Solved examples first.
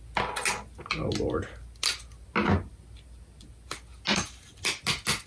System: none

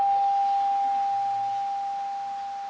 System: none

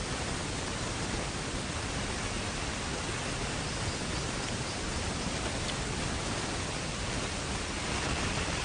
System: none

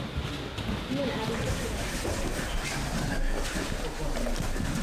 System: none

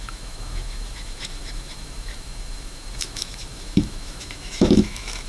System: autoencoder, DAC-VAE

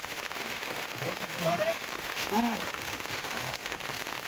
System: autoencoder, DAC-VAE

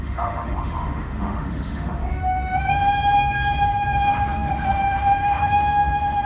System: autoencoder, DAC-VAE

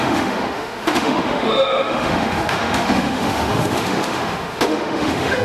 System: autoencoder, DAC-VAE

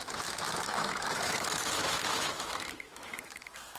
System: autoencoder, DAC-VAE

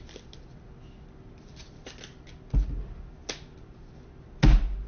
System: none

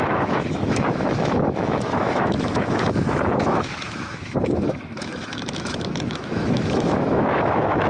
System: autoencoder, DAC-VAE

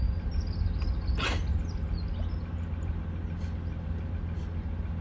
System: none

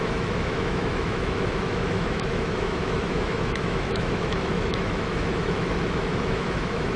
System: autoencoder, DAC-VAE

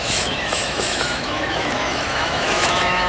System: autoencoder, DAC-VAE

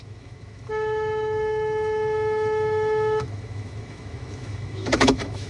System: autoencoder, DAC-VAE